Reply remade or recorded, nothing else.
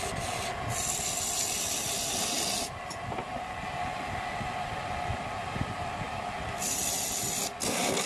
recorded